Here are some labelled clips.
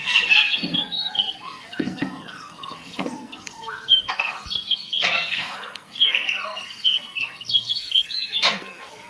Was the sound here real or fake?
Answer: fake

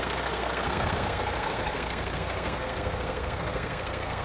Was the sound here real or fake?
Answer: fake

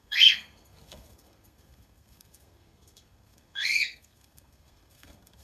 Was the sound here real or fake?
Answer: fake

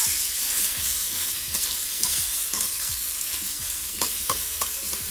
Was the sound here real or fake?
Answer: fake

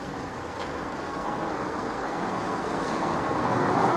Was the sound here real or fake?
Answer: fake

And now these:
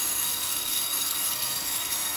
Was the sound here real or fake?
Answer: fake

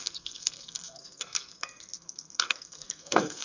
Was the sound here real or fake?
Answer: fake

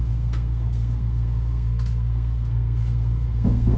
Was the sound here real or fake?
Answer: fake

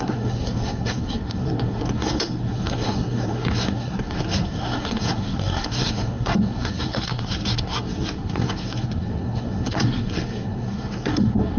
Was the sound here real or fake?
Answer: fake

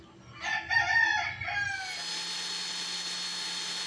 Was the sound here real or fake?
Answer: real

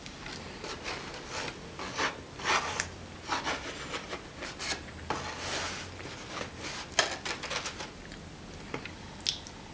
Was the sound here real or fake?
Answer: real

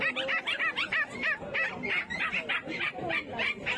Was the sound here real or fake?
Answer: real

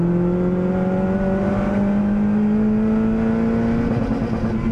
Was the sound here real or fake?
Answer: real